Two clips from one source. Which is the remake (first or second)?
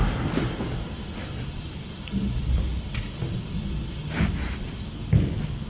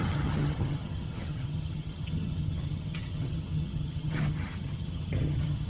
second